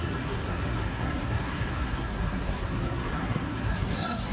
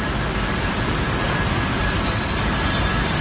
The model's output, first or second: first